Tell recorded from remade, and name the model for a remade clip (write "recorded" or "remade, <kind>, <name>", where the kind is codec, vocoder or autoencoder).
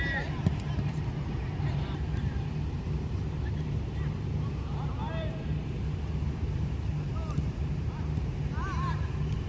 remade, vocoder, BigVGAN v2